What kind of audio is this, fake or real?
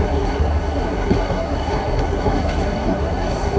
fake